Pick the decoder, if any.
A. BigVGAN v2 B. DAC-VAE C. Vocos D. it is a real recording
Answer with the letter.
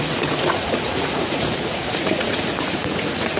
C